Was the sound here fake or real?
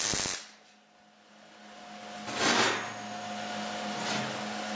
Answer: real